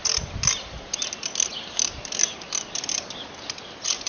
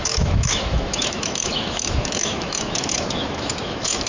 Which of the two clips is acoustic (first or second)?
first